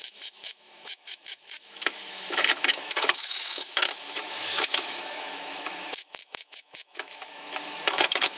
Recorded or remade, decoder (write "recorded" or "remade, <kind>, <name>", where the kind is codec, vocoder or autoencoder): remade, autoencoder, DAC-VAE